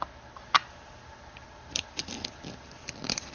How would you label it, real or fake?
real